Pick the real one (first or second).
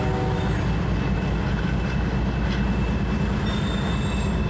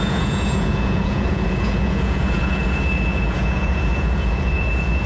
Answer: first